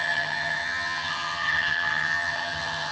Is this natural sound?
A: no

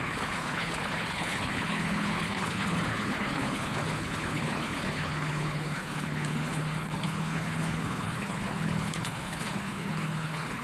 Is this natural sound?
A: no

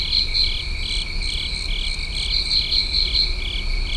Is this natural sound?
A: yes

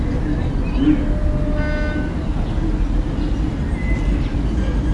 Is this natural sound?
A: yes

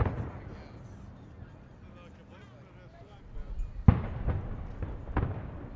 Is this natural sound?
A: yes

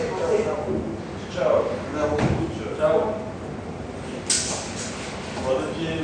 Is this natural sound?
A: yes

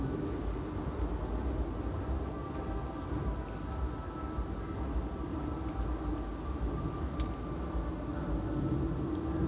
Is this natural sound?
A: yes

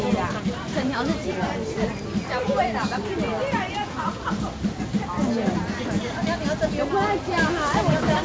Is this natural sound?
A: yes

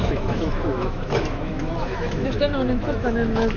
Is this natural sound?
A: no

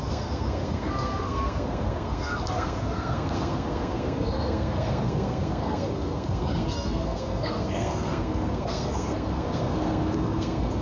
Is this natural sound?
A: no